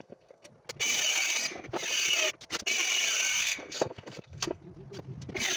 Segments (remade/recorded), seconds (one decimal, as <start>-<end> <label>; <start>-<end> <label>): 0.0-0.5 remade; 0.5-3.4 recorded; 3.4-4.6 remade; 4.6-5.6 recorded